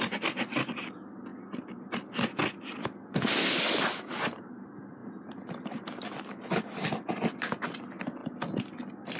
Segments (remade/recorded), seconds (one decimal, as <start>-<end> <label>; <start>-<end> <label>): 0.0-5.0 remade; 5.0-5.5 recorded; 5.5-8.2 remade; 8.2-9.2 recorded

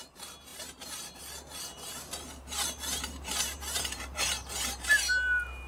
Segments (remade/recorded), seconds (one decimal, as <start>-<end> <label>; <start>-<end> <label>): 0.0-0.5 recorded; 0.5-1.2 remade; 1.2-1.7 recorded; 1.7-5.1 remade; 5.1-5.7 recorded

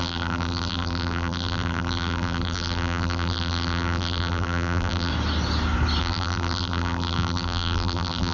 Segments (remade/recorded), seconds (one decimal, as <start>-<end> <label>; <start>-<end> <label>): 0.0-5.1 remade; 5.1-6.0 recorded; 6.0-8.3 remade

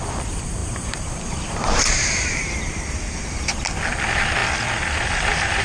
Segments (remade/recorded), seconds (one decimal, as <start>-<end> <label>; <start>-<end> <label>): 0.0-0.6 recorded; 0.6-3.8 remade; 3.8-5.6 recorded

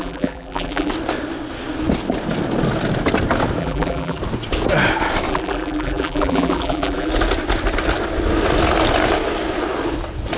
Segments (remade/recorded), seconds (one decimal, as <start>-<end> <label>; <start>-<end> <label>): 0.0-0.9 remade; 0.9-3.6 recorded; 3.6-4.2 remade; 4.2-5.3 recorded; 5.3-7.1 remade; 7.1-10.4 recorded